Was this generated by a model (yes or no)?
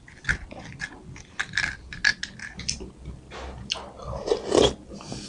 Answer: no